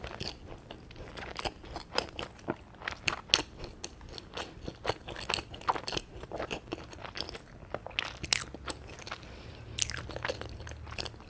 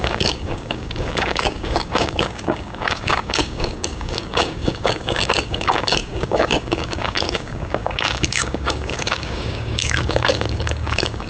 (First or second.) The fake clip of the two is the second